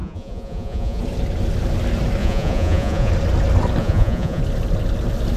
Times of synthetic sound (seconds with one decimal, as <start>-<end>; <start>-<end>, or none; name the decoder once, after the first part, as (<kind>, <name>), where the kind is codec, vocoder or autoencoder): 0.0-1.0 (vocoder, Vocos); 2.2-3.1; 3.8-4.4